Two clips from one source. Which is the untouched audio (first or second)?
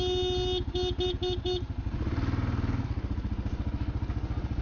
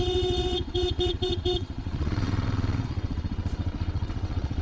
first